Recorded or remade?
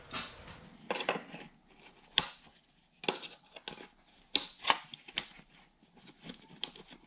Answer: recorded